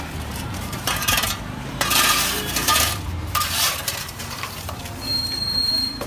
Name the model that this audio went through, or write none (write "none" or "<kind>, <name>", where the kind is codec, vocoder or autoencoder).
vocoder, BigVGAN v2